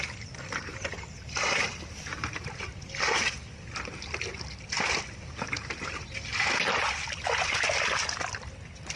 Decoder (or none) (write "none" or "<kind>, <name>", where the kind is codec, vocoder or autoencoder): none